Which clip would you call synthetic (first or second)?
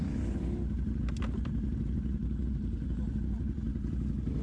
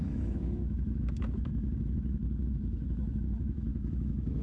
second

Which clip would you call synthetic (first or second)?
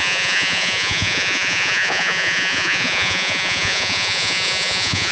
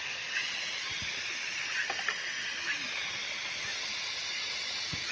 first